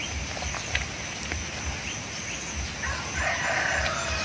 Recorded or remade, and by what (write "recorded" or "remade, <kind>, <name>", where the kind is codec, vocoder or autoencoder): recorded